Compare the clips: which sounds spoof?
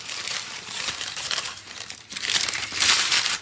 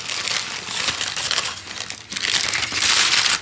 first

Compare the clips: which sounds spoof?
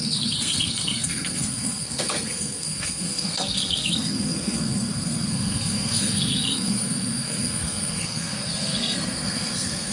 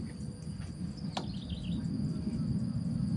first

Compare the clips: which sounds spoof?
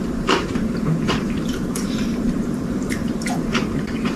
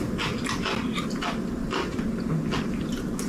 first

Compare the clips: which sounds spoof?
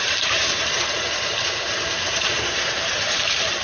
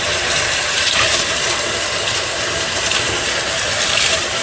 first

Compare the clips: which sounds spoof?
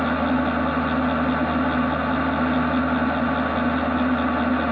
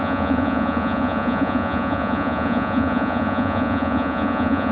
second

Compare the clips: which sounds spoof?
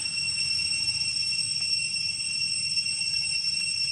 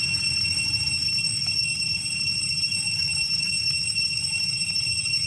second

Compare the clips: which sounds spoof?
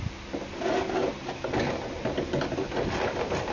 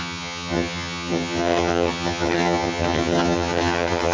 second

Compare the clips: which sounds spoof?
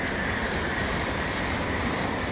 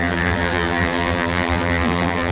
second